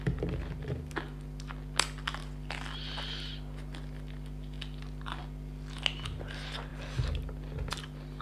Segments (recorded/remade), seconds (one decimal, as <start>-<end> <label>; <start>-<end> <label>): 0.0-8.2 recorded